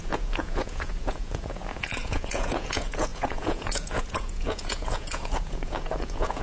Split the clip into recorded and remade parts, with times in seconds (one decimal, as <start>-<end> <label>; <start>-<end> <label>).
0.0-6.4 remade